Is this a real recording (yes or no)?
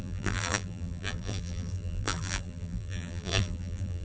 no